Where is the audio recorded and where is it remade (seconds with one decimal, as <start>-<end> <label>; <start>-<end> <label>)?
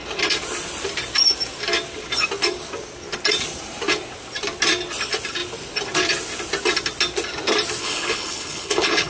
0.0-7.8 recorded; 7.8-9.1 remade